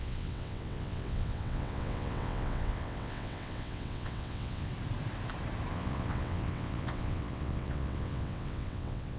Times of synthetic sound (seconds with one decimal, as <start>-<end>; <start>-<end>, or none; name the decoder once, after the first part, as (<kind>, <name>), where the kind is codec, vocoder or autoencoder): 0.0-4.7 (vocoder, WaveNeXt); 5.7-9.2